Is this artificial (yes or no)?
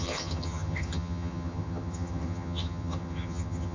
yes